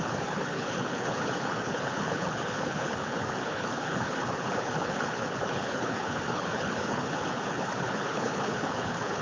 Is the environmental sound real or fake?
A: fake